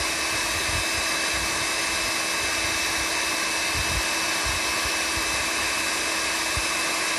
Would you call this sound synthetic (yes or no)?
no